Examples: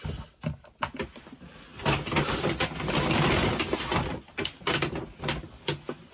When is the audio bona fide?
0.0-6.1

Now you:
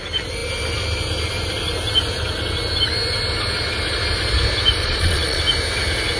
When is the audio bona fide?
0.0-4.8; 5.4-6.2